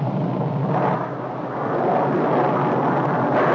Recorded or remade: recorded